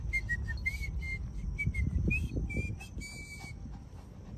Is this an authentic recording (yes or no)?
yes